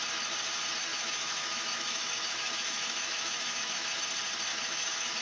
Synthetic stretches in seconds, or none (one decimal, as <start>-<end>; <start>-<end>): 0.9-4.0; 4.5-5.2